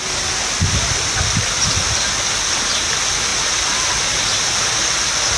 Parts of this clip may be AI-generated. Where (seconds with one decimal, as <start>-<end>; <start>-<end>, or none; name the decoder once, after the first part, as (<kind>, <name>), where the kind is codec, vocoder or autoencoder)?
none